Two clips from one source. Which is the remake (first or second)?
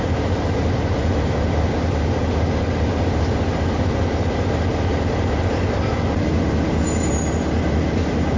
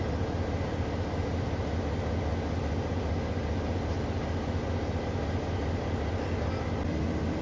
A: first